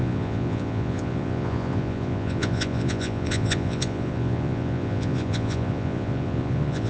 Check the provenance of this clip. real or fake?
fake